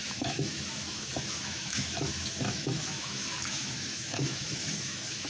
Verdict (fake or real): fake